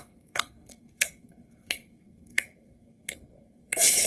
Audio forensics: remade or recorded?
remade